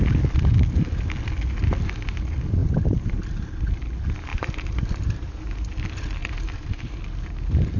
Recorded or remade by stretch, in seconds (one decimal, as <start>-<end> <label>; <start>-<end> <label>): 0.0-4.3 recorded; 4.3-5.7 remade; 5.7-6.2 recorded; 6.2-6.9 remade; 6.9-7.8 recorded